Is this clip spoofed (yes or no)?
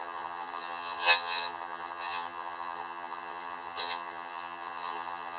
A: yes